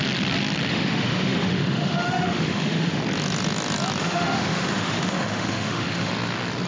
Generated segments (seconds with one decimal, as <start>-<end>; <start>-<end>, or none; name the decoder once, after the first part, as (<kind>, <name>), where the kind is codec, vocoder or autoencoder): 0.7-3.0 (autoencoder, DAC-VAE); 4.0-6.1